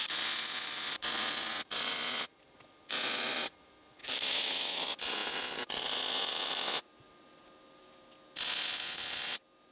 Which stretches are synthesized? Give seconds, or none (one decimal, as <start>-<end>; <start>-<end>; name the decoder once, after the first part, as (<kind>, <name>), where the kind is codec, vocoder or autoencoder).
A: 4.0-4.8 (autoencoder, DAC-VAE)